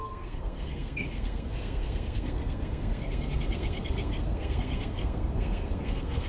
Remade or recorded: remade